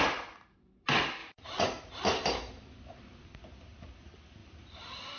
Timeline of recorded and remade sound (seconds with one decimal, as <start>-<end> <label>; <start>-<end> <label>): 0.0-1.2 recorded; 1.2-1.9 remade; 1.9-5.2 recorded